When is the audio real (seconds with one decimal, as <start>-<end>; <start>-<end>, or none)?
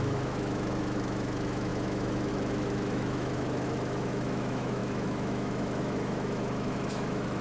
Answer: none